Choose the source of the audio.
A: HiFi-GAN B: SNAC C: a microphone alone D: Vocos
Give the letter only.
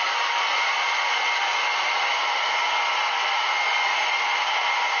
C